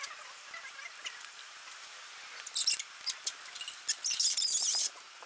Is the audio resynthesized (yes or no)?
no